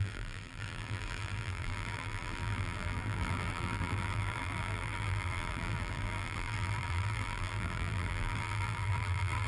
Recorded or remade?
remade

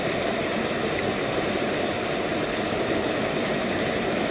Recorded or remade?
recorded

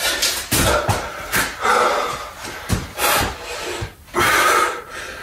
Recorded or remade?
recorded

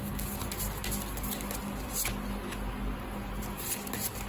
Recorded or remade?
recorded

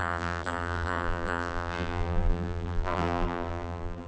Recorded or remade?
remade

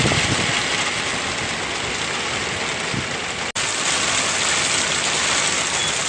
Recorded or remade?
recorded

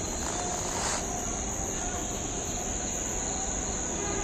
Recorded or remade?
recorded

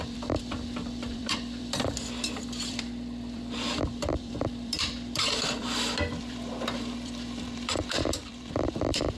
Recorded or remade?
remade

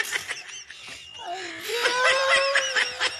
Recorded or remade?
remade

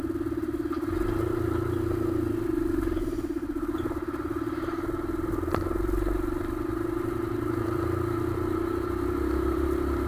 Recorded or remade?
remade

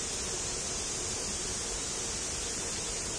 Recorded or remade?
recorded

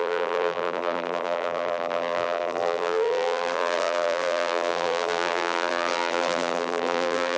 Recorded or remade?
remade